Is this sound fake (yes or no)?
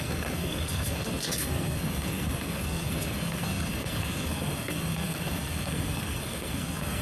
yes